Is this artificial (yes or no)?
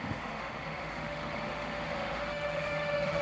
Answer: yes